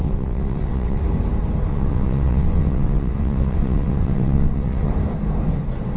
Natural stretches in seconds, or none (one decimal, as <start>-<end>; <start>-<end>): 1.0-1.7; 4.9-6.0